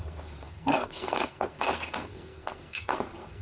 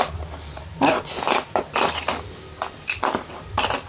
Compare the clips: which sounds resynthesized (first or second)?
first